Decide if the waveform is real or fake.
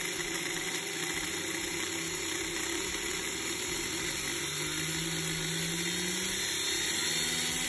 real